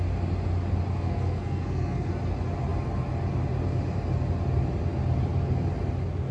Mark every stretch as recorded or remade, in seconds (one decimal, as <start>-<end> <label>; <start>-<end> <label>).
0.0-0.9 recorded; 0.9-2.1 remade; 2.1-6.3 recorded